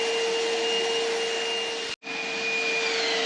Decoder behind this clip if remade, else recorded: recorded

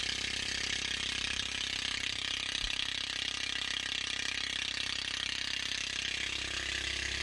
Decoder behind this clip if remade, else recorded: recorded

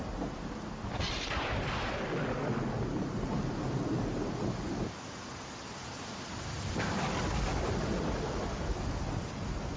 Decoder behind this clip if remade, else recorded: recorded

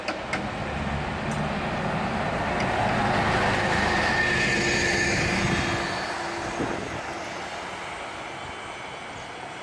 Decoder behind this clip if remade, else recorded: recorded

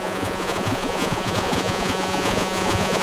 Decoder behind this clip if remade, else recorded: remade, vocoder, Vocos